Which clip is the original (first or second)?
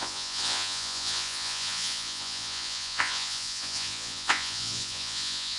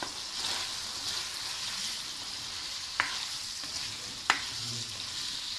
second